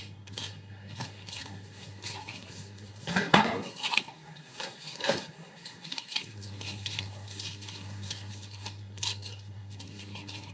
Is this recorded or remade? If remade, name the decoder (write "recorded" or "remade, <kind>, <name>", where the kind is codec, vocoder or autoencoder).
remade, codec, SNAC